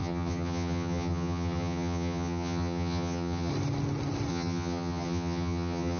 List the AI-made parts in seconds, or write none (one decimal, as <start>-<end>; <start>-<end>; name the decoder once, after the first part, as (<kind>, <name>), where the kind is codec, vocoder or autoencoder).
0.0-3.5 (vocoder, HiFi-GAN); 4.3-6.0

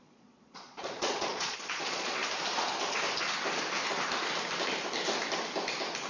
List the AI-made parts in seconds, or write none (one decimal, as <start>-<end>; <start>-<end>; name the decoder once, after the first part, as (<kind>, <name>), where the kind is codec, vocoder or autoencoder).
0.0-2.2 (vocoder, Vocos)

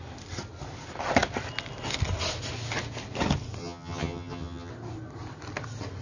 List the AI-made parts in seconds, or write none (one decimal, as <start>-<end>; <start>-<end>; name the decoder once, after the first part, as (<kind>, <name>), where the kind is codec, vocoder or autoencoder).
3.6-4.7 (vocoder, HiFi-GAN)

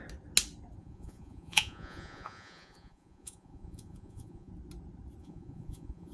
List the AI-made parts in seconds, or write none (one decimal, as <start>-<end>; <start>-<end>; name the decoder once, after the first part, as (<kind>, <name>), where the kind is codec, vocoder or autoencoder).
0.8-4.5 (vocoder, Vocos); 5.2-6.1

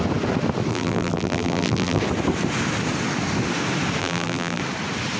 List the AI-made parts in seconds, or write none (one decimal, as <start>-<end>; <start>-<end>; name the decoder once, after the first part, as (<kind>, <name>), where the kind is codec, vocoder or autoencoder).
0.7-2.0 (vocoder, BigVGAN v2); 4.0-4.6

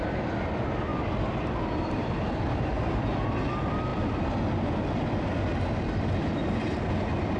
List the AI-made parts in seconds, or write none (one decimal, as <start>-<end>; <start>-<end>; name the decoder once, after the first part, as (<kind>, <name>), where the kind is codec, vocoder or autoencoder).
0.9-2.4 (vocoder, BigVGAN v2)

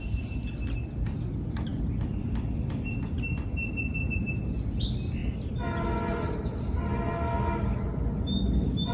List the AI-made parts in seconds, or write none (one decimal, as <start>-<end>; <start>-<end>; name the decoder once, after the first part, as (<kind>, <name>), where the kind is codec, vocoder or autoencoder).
none

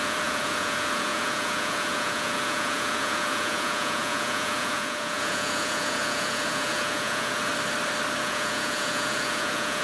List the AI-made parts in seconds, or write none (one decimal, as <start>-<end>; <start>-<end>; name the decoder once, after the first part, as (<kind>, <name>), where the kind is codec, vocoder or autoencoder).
0.0-7.5 (vocoder, Vocos); 8.2-9.8